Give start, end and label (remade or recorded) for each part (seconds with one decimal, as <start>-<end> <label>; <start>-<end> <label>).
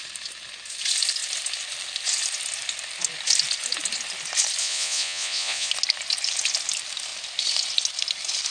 0.0-4.6 recorded; 4.6-5.7 remade; 5.7-8.5 recorded